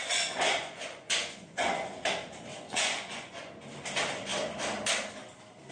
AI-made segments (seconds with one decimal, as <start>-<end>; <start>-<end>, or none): 0.0-2.0; 2.5-3.5